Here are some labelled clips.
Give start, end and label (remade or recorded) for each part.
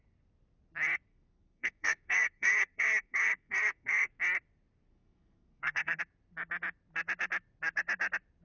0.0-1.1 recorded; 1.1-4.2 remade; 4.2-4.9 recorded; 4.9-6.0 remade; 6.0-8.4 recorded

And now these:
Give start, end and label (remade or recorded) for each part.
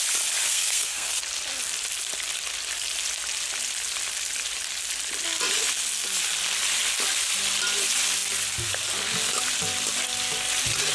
0.0-0.5 recorded; 0.5-1.2 remade; 1.2-10.9 recorded